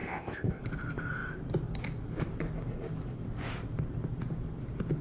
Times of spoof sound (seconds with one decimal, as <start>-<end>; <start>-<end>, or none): 0.0-0.6